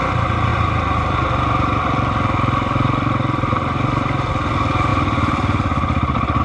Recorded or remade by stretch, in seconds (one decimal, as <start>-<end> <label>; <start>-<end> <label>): 0.0-0.5 recorded; 0.5-4.3 remade; 4.3-4.9 recorded; 4.9-6.4 remade